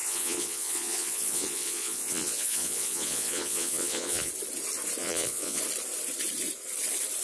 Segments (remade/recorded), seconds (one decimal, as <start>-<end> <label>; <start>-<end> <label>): 0.0-4.3 remade; 4.3-5.0 recorded; 5.0-5.6 remade; 5.6-7.2 recorded